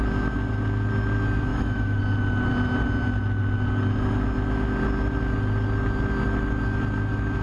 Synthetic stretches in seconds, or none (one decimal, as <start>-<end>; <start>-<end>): 1.5-2.0